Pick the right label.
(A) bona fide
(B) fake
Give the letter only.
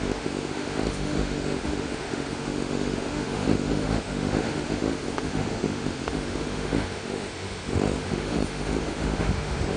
B